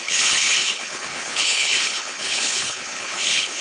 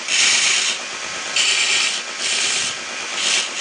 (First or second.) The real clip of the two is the second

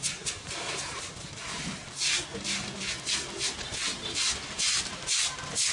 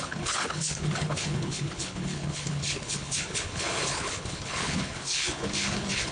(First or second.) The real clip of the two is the first